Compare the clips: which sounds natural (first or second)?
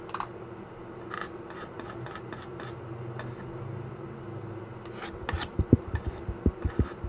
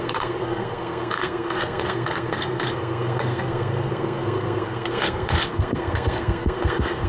first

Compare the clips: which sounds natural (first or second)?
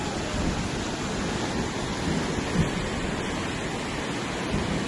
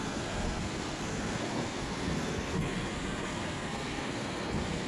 first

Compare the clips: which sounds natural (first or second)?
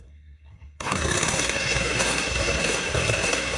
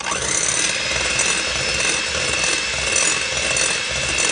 second